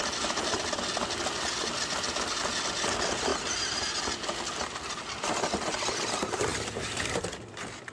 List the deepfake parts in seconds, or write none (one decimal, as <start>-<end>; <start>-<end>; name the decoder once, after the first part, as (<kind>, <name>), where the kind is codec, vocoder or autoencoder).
none